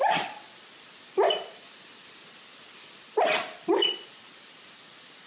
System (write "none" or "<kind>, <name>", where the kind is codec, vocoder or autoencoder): none